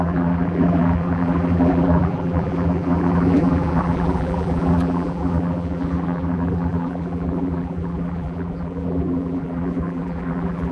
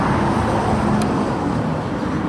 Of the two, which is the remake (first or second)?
first